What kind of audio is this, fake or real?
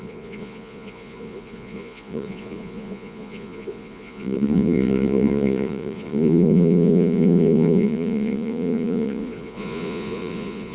fake